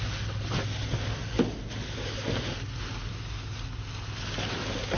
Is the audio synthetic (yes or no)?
no